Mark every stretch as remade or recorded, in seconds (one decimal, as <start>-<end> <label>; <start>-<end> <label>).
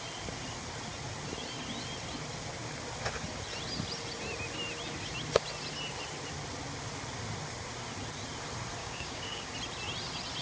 0.0-8.8 recorded; 8.8-9.5 remade; 9.5-10.4 recorded